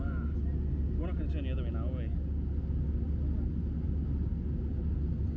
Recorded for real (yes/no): yes